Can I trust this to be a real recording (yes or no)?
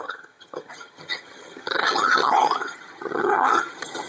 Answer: no